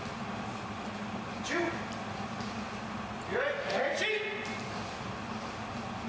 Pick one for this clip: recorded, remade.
recorded